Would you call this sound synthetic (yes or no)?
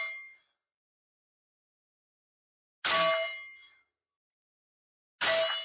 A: no